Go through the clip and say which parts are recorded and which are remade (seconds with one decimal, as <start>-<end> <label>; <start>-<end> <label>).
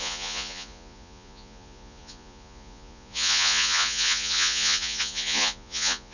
0.0-6.1 remade